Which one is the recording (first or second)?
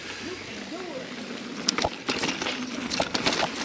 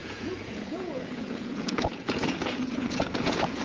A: first